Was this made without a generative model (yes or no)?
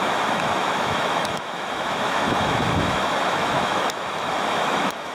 no